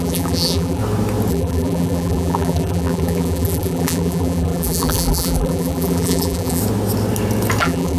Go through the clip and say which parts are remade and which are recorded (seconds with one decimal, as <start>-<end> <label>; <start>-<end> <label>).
0.0-0.8 remade; 0.8-1.3 recorded; 1.3-6.6 remade; 6.6-7.6 recorded; 7.6-8.0 remade